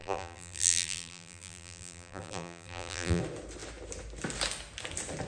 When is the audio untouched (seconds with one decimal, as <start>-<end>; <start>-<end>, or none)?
3.2-5.3